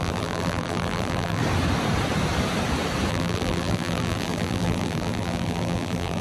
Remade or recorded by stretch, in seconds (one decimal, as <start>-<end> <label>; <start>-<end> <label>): 0.0-1.4 remade; 1.4-3.1 recorded; 3.1-6.2 remade